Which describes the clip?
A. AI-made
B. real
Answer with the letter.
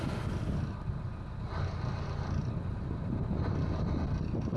B